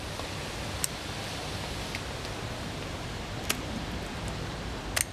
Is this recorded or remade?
recorded